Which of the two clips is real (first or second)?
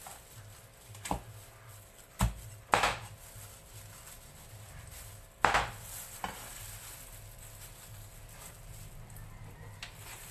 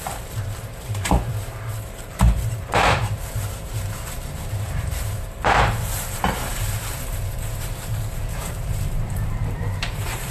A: first